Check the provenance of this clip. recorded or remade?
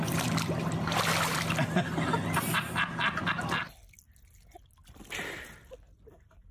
recorded